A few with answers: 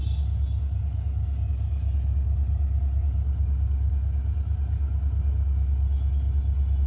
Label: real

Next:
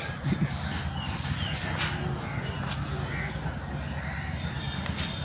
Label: real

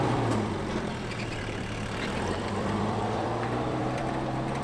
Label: fake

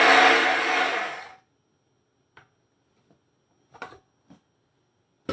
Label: real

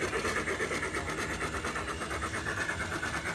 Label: real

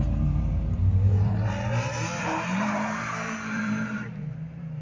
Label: fake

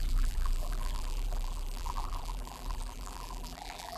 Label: fake